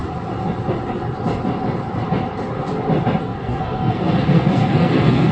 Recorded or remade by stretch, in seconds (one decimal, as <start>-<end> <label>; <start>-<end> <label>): 0.0-3.2 recorded; 3.2-5.3 remade